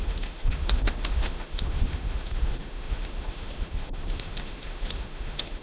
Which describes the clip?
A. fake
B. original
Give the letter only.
A